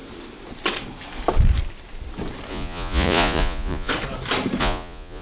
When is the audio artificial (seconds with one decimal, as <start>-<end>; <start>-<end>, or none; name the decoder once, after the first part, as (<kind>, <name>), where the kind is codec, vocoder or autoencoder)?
2.5-3.9 (vocoder, Vocos); 4.6-5.2